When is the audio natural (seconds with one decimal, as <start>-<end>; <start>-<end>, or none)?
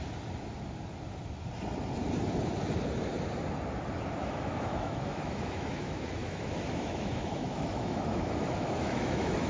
0.0-4.2